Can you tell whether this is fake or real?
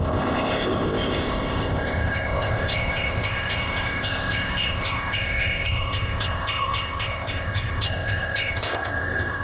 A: fake